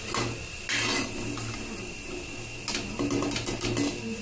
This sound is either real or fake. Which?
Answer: real